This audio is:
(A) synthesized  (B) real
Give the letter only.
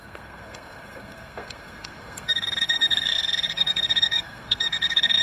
A